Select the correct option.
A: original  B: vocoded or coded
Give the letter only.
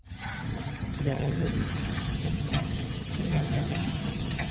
B